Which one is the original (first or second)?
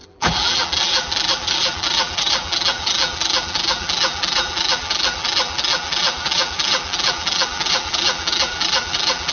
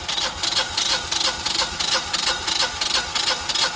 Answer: second